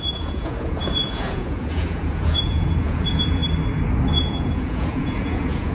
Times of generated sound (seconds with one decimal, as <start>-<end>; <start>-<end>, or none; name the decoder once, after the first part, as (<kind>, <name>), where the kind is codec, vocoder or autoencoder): 0.0-3.4 (vocoder, Vocos); 4.1-5.7